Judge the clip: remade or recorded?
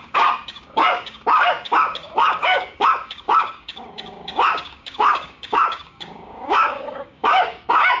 remade